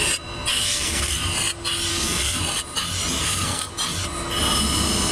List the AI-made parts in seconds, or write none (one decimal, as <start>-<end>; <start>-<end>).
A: 0.5-1.1; 1.9-2.4; 3.2-3.7